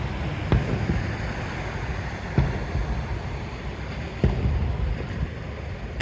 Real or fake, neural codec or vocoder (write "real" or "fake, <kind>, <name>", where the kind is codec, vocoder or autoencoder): real